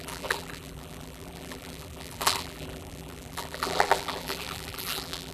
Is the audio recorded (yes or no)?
no